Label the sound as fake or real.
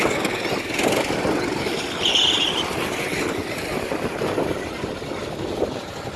real